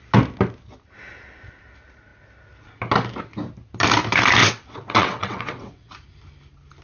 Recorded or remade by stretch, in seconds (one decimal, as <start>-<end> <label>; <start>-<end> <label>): 0.0-4.4 recorded; 4.4-5.9 remade; 5.9-6.8 recorded